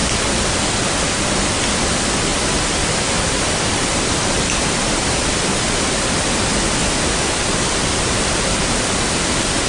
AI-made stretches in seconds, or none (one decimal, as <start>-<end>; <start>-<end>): 1.7-2.3; 3.7-6.8; 7.4-9.7